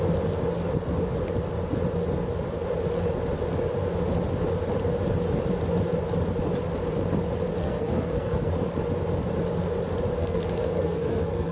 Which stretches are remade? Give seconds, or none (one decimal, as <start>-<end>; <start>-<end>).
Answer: 7.6-8.5; 10.2-11.5